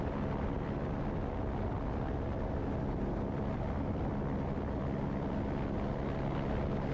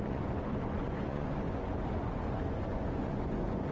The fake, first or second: second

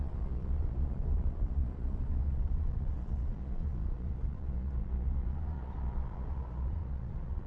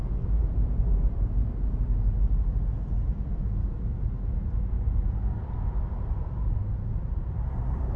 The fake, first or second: first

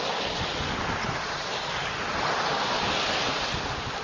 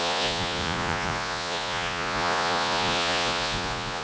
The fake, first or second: second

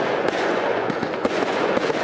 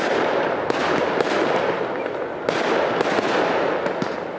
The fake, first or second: first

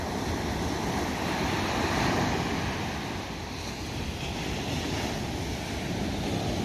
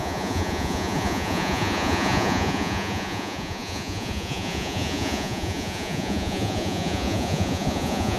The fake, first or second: second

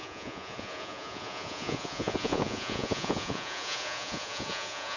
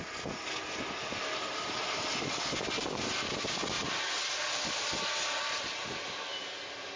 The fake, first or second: first